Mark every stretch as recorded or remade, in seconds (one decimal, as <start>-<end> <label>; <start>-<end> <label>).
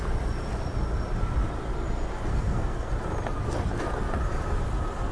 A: 0.0-2.3 recorded; 2.3-2.9 remade; 2.9-5.1 recorded